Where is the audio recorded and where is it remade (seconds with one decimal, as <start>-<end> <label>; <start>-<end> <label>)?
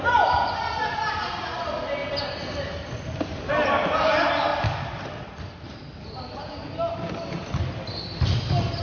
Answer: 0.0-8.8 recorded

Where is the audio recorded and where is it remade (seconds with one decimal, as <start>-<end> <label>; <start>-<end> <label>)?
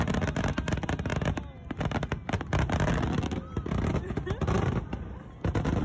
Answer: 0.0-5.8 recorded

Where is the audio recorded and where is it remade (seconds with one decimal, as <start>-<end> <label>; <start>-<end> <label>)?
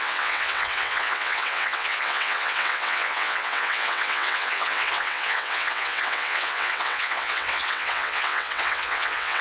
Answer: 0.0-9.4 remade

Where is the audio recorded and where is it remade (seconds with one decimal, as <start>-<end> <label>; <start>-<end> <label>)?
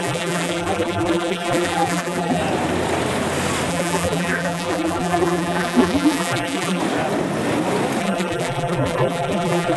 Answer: 0.0-2.4 remade; 2.4-3.7 recorded; 3.7-6.8 remade; 6.8-8.0 recorded; 8.0-9.8 remade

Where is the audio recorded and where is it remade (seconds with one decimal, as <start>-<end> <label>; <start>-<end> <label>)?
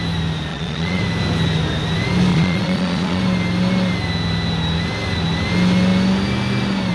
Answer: 0.0-0.5 recorded; 0.5-1.0 remade; 1.0-2.3 recorded; 2.3-3.2 remade; 3.2-6.9 recorded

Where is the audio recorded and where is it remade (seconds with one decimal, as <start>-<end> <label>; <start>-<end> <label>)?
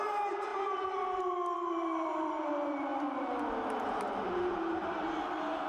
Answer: 0.0-2.9 remade; 2.9-3.8 recorded; 3.8-4.8 remade; 4.8-5.7 recorded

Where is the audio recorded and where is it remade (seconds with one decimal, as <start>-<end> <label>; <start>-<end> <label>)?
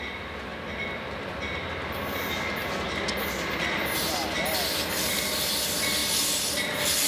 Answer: 0.0-0.5 remade; 0.5-4.4 recorded; 4.4-6.0 remade; 6.0-6.5 recorded; 6.5-7.1 remade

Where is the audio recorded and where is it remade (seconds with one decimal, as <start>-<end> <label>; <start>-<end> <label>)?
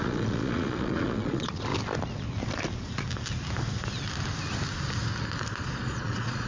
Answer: 0.0-1.7 remade; 1.7-5.6 recorded; 5.6-6.5 remade